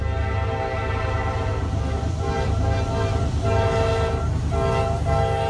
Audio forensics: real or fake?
real